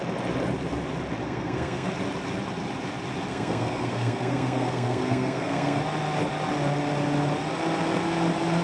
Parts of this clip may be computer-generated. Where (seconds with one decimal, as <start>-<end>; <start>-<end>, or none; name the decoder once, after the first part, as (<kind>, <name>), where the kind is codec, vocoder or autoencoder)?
1.2-1.9 (codec, SNAC); 3.3-5.8

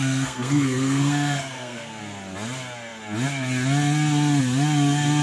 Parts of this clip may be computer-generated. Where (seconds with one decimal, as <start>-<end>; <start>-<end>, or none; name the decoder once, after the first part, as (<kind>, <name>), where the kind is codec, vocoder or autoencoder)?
0.0-2.0 (codec, SNAC)

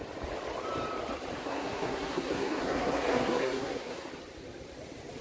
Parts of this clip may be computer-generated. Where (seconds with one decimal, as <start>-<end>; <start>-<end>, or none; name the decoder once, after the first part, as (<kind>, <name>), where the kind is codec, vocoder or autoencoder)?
1.4-4.1 (codec, SNAC)

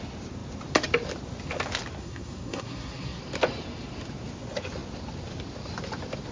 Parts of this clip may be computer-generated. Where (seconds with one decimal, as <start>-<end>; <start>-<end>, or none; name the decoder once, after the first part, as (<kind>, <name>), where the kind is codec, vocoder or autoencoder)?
2.0-3.2 (codec, SNAC)

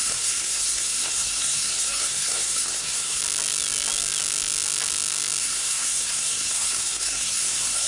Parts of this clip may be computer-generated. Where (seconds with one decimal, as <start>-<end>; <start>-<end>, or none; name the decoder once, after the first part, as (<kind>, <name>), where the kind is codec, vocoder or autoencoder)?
0.0-3.2 (codec, SNAC); 5.4-7.9

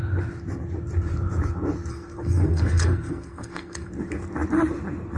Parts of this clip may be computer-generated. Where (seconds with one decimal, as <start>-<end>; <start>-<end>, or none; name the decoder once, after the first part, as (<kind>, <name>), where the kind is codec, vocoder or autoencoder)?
1.9-3.9 (codec, SNAC)

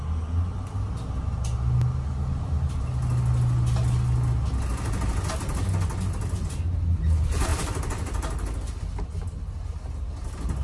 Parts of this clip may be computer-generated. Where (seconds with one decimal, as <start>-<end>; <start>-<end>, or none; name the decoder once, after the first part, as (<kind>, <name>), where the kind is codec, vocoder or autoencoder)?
none